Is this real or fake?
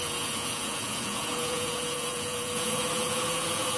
fake